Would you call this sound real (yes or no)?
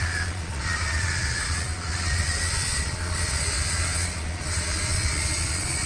no